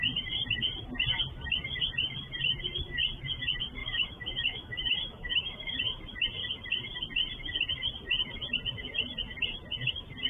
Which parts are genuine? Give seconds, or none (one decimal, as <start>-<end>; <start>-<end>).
0.0-3.8; 5.8-10.3